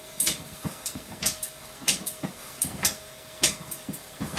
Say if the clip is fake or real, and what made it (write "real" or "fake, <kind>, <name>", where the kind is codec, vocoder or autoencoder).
fake, codec, SNAC